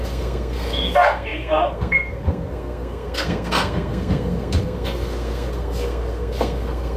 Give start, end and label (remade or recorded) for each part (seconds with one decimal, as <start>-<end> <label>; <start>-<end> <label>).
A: 0.0-7.0 remade